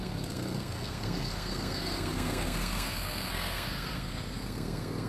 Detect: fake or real fake